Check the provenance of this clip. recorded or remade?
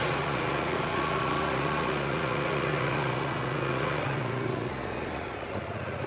remade